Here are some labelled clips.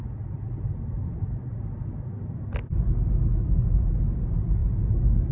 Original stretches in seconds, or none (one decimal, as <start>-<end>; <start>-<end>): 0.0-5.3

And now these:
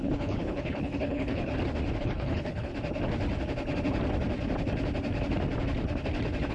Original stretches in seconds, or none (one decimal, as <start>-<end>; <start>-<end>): 1.5-2.0; 2.7-6.5

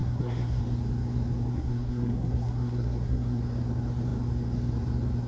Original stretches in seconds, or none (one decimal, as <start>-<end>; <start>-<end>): 0.6-1.5; 3.4-5.3